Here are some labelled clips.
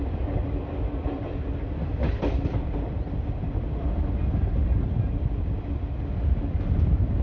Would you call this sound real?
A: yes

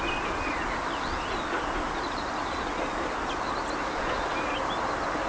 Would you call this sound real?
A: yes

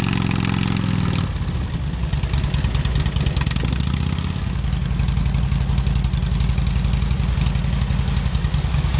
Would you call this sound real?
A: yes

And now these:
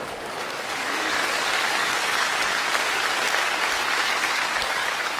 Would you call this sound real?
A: no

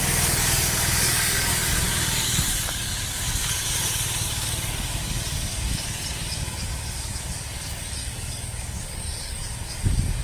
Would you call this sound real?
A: no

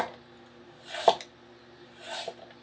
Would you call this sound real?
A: yes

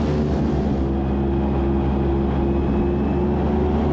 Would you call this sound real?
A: yes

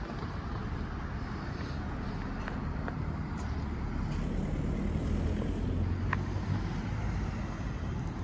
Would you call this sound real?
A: yes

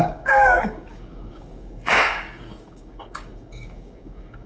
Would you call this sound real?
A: no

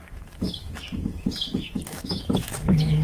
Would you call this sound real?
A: no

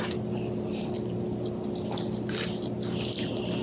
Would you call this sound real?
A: yes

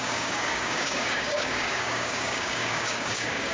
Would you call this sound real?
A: no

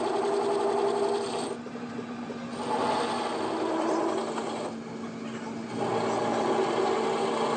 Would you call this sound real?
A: yes